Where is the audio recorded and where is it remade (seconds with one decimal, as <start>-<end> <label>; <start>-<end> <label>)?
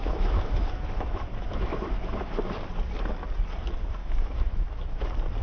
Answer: 0.0-2.3 remade; 2.3-4.0 recorded; 4.0-5.0 remade; 5.0-5.4 recorded